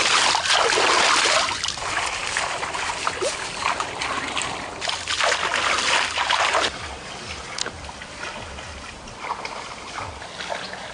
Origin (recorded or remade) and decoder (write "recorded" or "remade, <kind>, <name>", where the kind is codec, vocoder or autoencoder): recorded